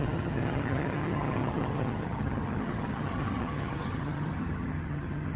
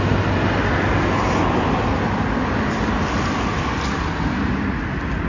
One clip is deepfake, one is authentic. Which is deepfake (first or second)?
first